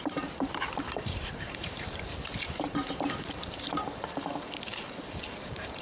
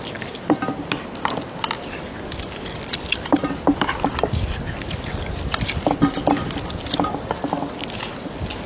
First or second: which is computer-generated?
first